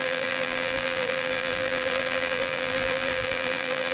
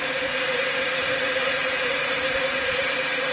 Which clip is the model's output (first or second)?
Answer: first